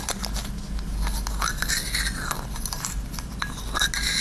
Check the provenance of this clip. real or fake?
real